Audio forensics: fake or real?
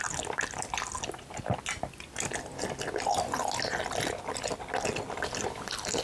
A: real